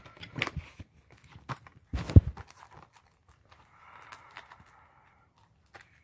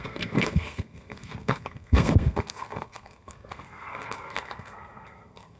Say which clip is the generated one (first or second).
second